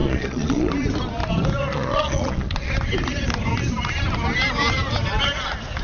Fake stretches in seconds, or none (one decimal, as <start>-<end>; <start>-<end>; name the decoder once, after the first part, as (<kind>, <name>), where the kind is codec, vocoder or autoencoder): 0.0-0.7 (vocoder, Vocos); 1.7-2.7